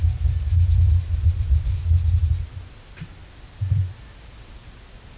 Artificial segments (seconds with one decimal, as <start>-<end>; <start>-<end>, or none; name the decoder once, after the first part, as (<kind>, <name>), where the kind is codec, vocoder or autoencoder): none

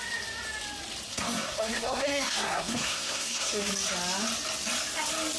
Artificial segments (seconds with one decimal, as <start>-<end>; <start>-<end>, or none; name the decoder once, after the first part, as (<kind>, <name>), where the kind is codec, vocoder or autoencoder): 1.1-3.7 (codec, SNAC)

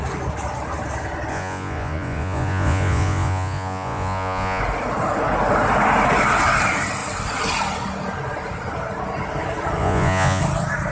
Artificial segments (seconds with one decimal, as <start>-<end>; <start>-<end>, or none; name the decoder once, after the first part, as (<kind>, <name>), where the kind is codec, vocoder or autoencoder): 1.3-4.6 (vocoder, Vocos); 9.8-10.4

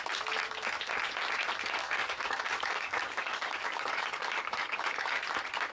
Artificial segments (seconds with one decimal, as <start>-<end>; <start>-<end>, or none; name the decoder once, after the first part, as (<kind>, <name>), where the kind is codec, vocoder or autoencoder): 1.8-5.2 (codec, DAC)